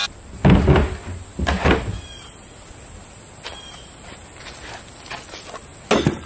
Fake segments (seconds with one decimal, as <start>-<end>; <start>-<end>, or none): none